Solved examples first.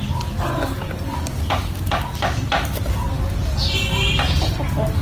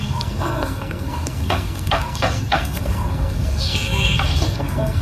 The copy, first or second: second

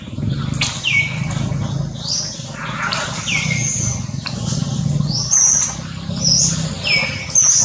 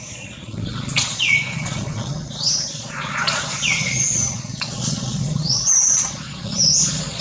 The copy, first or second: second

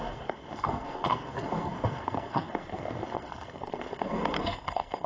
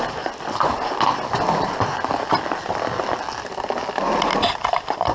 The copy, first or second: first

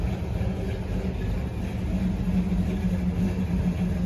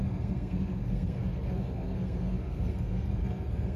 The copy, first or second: second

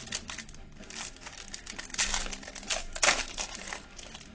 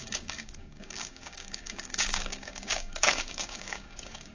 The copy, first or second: second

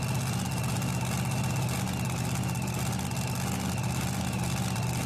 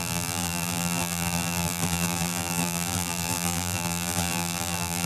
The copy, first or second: second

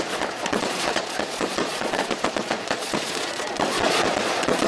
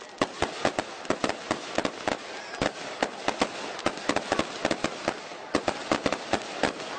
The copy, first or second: first